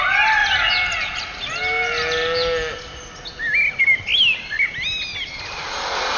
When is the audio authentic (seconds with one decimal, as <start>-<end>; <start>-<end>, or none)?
0.0-6.2